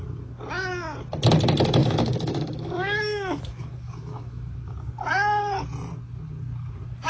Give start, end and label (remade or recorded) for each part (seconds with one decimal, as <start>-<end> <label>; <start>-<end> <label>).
0.0-1.8 recorded; 1.8-4.5 remade; 4.5-7.1 recorded

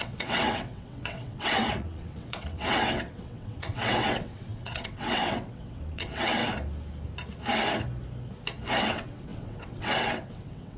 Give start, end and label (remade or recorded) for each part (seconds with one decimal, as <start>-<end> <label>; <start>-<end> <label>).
0.0-6.4 remade; 6.4-8.8 recorded; 8.8-10.8 remade

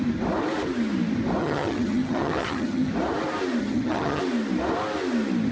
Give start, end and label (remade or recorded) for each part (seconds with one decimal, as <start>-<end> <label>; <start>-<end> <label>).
0.0-1.4 recorded; 1.4-2.9 remade; 2.9-3.6 recorded; 3.6-4.2 remade; 4.2-5.5 recorded

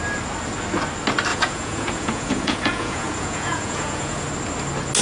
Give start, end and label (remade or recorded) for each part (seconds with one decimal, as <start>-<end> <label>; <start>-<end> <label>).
0.0-1.3 recorded; 1.3-4.3 remade; 4.3-5.0 recorded

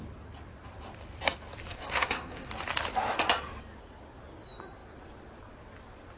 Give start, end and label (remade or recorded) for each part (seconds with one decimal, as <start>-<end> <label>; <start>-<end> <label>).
0.0-1.7 recorded; 1.7-2.5 remade; 2.5-6.2 recorded